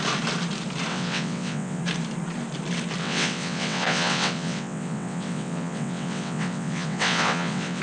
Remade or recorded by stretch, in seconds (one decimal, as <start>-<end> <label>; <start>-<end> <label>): 0.0-0.9 recorded; 0.9-1.8 remade; 1.8-3.0 recorded; 3.0-7.8 remade

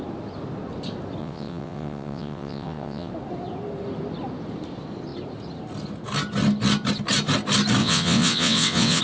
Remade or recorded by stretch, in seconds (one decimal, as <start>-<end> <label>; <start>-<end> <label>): 0.0-1.2 recorded; 1.2-3.1 remade; 3.1-7.8 recorded; 7.8-9.0 remade

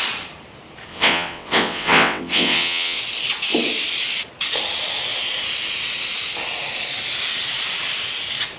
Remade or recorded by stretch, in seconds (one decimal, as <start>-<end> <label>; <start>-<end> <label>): 0.0-0.9 recorded; 0.9-3.0 remade; 3.0-8.6 recorded

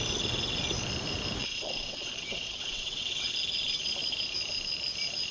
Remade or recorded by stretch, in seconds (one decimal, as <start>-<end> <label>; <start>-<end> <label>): 0.0-1.4 recorded; 1.4-3.3 remade; 3.3-5.3 recorded